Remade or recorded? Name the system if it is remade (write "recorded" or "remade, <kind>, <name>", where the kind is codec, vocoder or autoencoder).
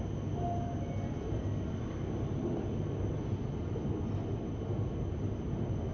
recorded